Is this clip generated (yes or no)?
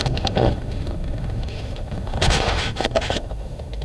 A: yes